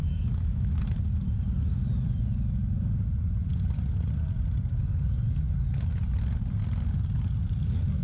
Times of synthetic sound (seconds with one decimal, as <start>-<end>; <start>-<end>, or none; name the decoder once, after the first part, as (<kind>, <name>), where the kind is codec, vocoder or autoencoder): 0.0-0.8 (autoencoder, DAC-VAE)